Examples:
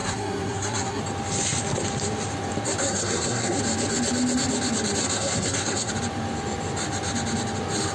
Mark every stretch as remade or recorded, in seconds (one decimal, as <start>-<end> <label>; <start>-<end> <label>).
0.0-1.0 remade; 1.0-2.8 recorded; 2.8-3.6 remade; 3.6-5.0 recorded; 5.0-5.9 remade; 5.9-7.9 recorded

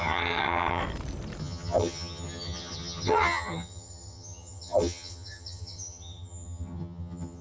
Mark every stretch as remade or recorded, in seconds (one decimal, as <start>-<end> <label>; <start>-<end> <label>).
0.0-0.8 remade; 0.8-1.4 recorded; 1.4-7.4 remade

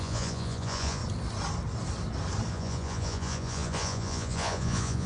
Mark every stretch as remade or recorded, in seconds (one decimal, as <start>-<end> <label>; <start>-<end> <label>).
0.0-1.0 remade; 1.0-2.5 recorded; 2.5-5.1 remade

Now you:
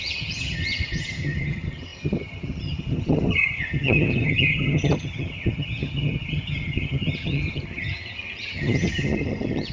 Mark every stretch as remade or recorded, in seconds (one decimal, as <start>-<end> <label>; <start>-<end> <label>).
0.0-9.7 remade